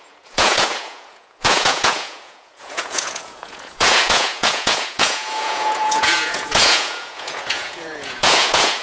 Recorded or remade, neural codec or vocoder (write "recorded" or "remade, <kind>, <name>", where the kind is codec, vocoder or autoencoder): remade, vocoder, Vocos